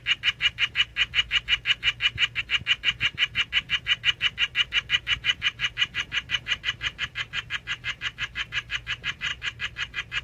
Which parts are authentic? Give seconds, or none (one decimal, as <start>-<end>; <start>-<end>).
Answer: 0.0-10.2